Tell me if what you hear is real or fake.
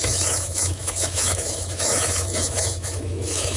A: fake